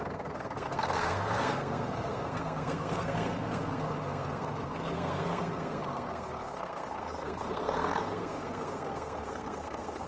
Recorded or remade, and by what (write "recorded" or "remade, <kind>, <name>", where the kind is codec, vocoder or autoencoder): remade, codec, SNAC